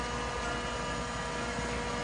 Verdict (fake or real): real